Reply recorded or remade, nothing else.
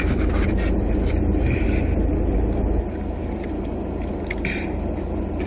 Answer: recorded